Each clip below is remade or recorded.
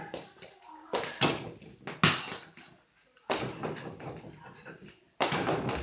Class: recorded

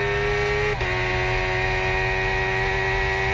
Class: recorded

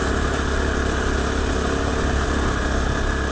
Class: recorded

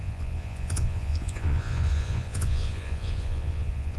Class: remade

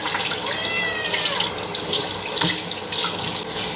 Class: recorded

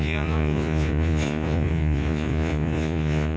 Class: remade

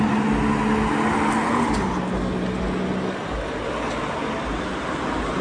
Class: recorded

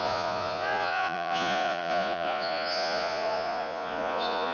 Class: remade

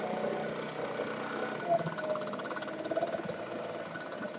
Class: recorded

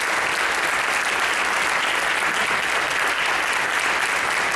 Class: recorded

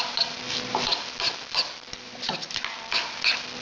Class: recorded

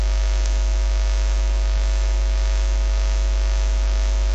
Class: recorded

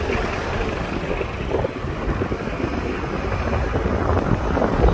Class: recorded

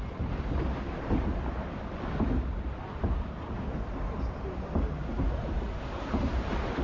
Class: recorded